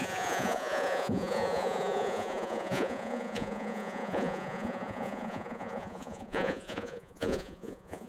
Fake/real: fake